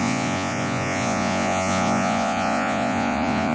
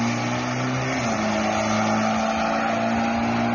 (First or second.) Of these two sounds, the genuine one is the second